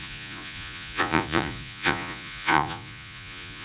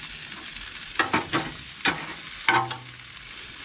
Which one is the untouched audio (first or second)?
second